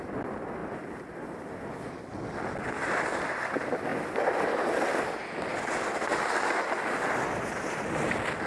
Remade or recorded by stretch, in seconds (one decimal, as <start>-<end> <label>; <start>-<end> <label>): 0.0-8.5 recorded